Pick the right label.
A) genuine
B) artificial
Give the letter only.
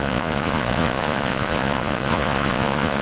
B